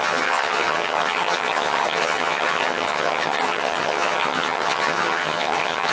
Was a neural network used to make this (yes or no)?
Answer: yes